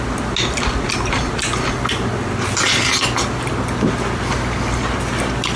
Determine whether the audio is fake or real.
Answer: real